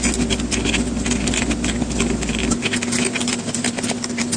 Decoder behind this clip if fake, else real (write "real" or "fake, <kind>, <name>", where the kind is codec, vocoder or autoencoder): real